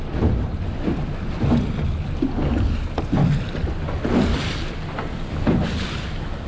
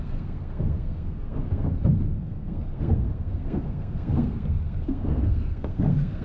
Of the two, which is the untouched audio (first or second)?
first